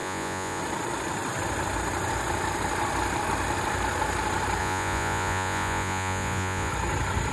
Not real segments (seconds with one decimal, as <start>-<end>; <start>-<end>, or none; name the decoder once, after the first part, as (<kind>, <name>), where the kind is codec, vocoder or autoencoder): 0.0-0.6 (vocoder, Vocos); 4.6-6.7

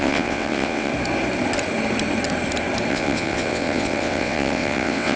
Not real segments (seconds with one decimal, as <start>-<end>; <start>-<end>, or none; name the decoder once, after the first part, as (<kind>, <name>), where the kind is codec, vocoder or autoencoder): 0.0-0.9 (vocoder, WaveNeXt); 2.9-5.2

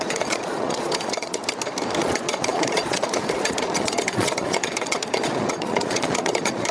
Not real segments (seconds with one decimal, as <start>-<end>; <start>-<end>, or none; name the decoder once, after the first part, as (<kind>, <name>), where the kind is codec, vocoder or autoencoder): 0.0-1.4 (vocoder, Vocos); 2.0-6.7